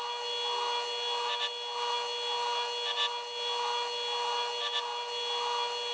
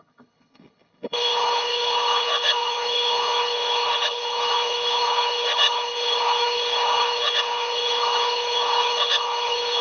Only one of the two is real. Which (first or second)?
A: first